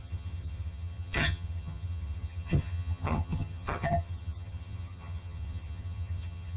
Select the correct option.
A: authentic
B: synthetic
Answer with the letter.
B